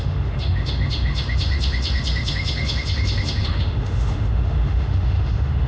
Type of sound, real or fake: fake